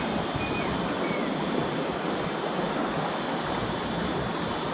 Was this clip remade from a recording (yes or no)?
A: no